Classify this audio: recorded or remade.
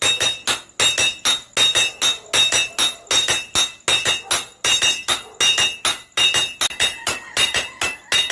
recorded